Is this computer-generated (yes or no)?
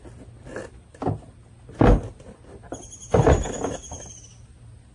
no